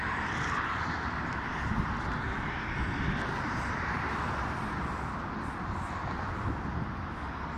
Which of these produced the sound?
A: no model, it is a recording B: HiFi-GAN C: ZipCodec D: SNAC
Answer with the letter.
A